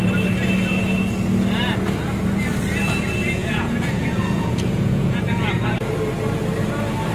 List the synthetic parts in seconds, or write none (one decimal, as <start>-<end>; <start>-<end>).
3.4-5.9